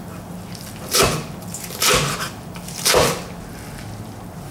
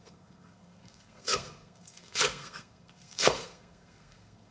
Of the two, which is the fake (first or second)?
second